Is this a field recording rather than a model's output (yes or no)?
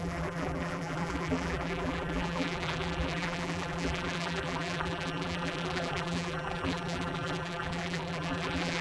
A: no